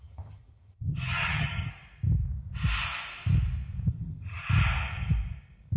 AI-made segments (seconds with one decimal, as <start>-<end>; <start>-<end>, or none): 0.0-1.7; 3.9-4.4